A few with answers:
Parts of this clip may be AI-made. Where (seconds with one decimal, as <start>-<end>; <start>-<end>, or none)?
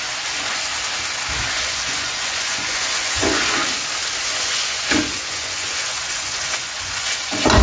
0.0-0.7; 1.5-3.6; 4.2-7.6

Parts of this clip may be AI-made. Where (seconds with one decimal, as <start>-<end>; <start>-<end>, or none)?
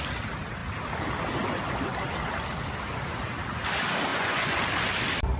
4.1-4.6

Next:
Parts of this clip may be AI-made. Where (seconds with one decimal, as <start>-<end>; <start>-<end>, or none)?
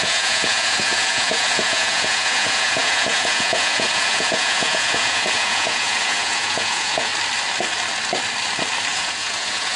0.0-7.1; 8.9-9.8